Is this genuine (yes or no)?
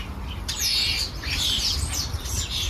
yes